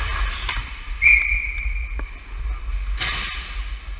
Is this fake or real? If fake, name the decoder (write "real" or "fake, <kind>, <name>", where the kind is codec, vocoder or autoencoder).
real